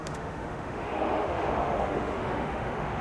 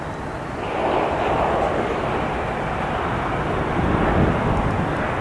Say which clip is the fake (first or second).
first